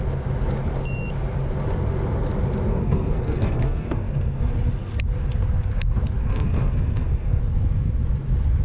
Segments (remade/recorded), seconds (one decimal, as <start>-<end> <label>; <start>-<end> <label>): 0.0-2.7 recorded; 2.7-4.4 remade; 4.4-6.2 recorded; 6.2-7.4 remade; 7.4-8.6 recorded